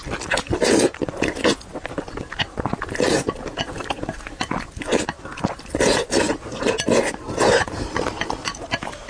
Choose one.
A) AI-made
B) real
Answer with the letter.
B